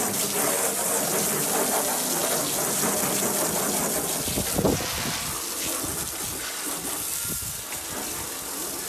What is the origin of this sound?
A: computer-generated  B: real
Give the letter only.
B